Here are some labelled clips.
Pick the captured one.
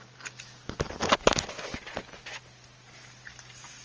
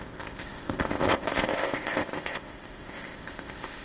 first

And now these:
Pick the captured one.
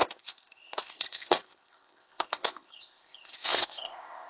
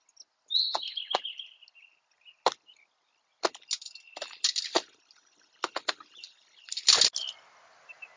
second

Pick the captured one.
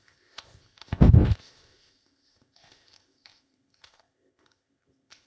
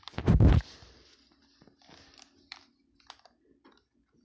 second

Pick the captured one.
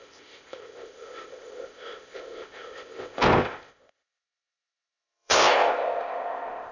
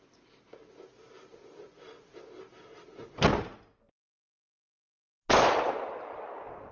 second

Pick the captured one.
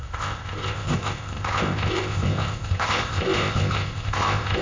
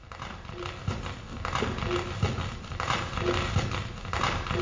second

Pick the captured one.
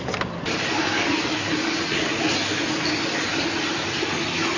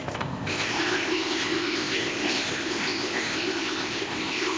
first